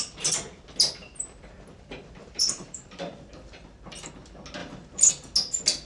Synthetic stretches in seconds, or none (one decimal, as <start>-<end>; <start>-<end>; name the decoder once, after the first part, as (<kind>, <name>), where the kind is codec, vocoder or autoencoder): 1.0-4.1 (vocoder, BigVGAN v2); 4.6-5.1